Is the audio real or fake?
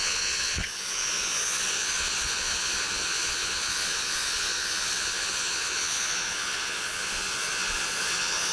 fake